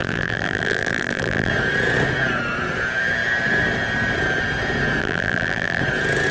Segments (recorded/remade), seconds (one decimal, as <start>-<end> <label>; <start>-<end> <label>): 0.0-1.5 remade; 1.5-5.0 recorded; 5.0-5.8 remade; 5.8-6.3 recorded